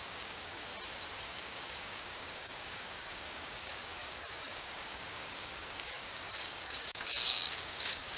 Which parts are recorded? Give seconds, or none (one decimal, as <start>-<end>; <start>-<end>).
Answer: 0.7-1.2